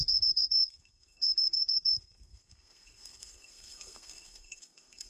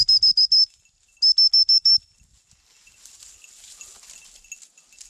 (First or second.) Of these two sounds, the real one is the second